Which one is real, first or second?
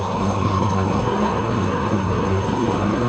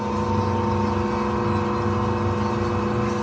second